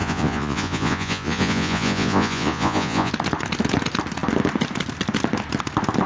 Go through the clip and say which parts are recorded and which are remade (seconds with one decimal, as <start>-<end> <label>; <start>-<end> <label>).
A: 0.0-3.1 remade; 3.1-6.1 recorded